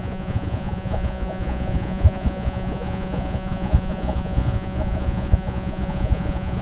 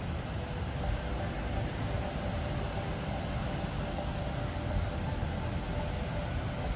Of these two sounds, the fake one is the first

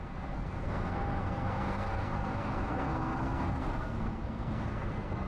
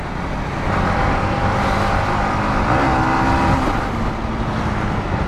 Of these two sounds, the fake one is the first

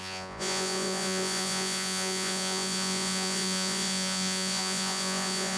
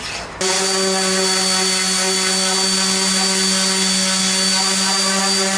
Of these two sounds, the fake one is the first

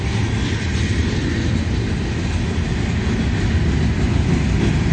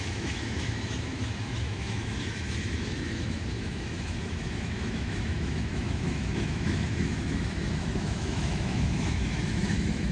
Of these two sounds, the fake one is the second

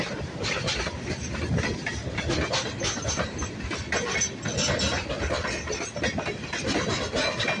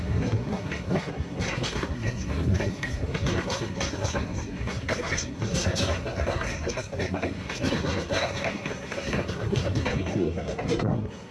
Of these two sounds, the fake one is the second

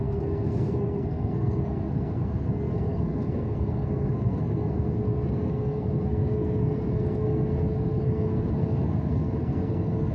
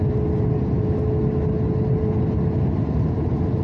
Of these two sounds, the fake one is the first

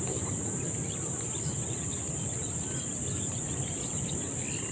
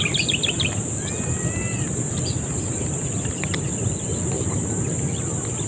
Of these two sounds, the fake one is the first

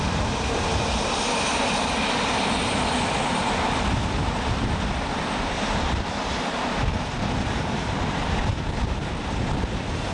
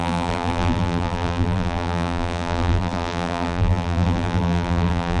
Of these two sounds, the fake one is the second